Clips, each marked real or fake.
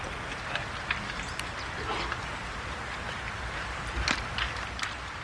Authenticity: real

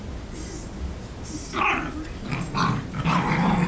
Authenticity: real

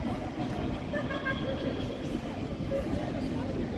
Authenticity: real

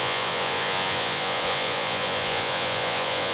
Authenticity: fake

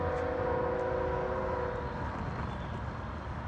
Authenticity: real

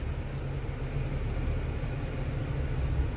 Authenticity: real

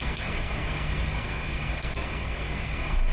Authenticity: fake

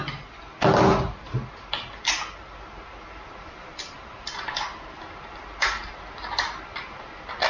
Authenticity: real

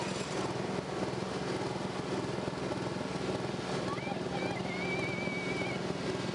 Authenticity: real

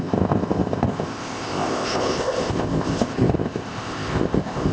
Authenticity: fake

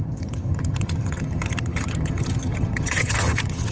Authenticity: fake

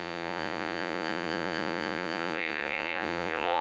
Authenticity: fake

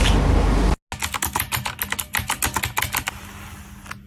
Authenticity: real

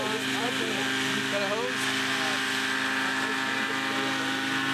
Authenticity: real